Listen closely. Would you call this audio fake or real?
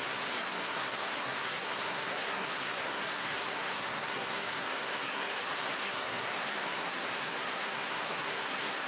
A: fake